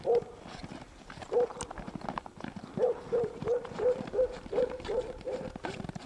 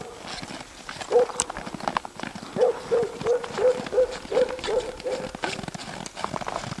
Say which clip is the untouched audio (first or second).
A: second